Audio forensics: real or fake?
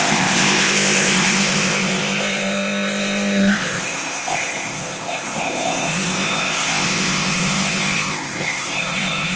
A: fake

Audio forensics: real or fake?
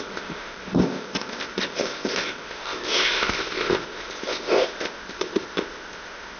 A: fake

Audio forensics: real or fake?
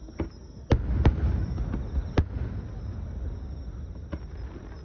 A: real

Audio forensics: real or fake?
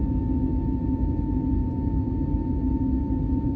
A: real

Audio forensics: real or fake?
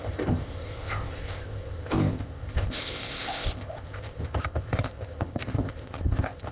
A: fake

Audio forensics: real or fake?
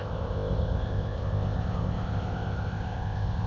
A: fake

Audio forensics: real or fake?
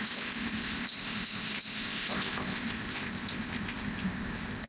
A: fake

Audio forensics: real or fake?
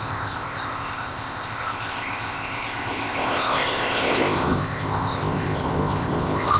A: fake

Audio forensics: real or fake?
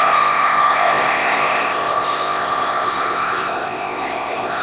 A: fake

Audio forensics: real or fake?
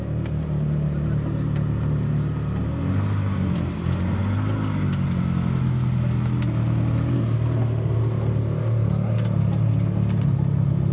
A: real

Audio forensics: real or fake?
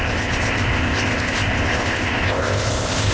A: fake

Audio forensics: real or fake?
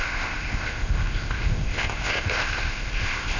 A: fake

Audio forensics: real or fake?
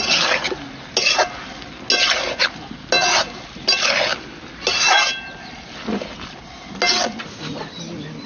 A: real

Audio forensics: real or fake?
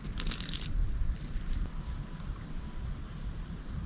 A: real